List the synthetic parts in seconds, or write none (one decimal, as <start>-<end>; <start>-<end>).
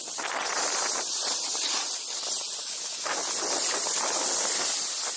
2.6-3.2